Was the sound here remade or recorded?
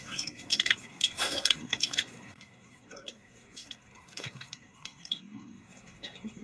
remade